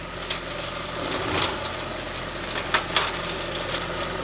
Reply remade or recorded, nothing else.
recorded